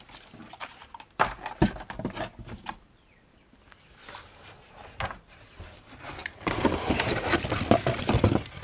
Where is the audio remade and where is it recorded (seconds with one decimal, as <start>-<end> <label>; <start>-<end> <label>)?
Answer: 0.0-0.6 recorded; 0.6-1.4 remade; 1.4-6.2 recorded; 6.2-7.3 remade; 7.3-8.6 recorded